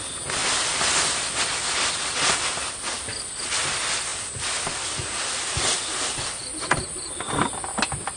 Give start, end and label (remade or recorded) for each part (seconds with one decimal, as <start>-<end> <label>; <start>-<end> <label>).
0.0-8.2 recorded